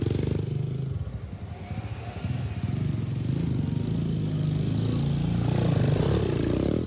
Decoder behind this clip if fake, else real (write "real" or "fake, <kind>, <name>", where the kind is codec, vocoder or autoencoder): real